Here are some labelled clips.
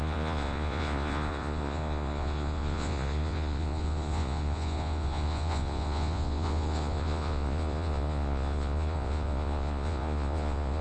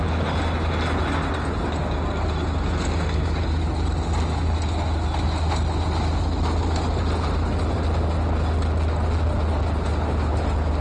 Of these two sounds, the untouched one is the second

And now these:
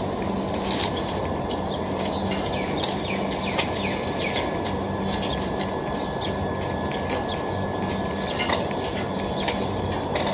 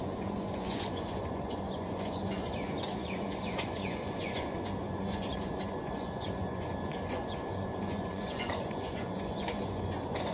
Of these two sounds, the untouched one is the first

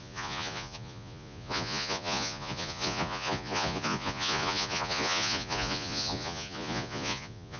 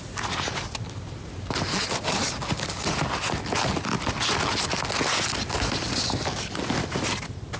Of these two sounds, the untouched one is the second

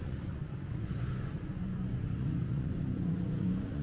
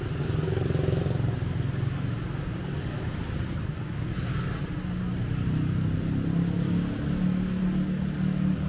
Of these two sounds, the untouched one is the second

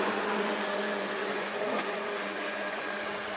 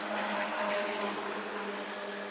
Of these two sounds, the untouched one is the second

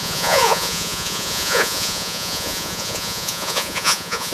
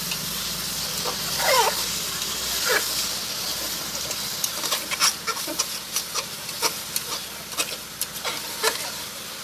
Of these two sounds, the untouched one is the second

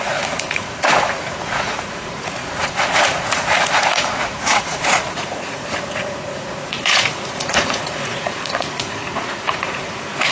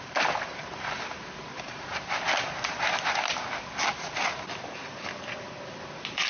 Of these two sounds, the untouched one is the second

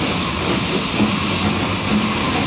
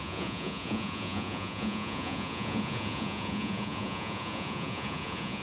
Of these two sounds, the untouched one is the first